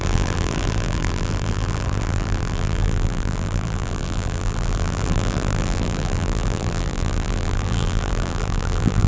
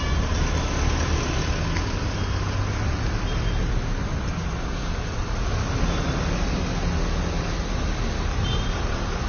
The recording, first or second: second